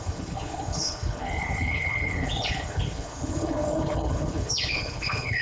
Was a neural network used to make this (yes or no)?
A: yes